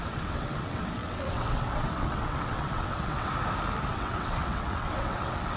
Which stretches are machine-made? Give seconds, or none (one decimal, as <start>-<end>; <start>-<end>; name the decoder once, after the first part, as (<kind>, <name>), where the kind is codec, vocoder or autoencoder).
0.0-3.3 (vocoder, WaveNeXt); 3.9-5.6